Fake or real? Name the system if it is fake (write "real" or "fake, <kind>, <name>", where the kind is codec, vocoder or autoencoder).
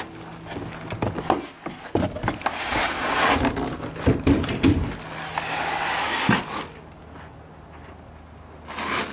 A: real